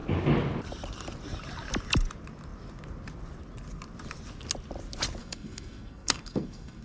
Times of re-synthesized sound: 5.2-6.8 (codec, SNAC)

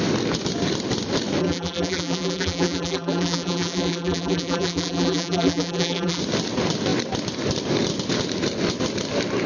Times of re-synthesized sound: 1.4-6.2 (vocoder, BigVGAN v2)

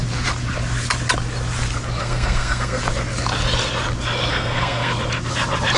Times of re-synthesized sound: 2.0-2.8 (codec, SNAC); 4.3-4.9

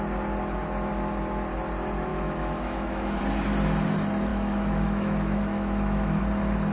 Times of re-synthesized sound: 2.1-3.2 (autoencoder, DAC-VAE); 4.3-6.2

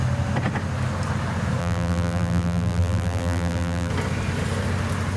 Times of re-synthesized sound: 1.6-3.9 (vocoder, BigVGAN v2)

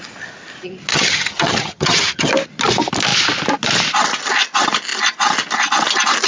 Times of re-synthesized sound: 0.9-2.3 (vocoder, HiFi-GAN)

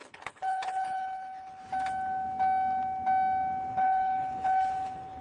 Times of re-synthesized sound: 0.0-1.6 (codec, HILCodec); 3.7-5.2